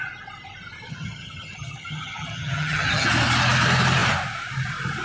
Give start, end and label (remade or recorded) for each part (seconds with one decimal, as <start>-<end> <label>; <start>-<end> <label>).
0.0-0.9 recorded; 0.9-3.1 remade; 3.1-5.0 recorded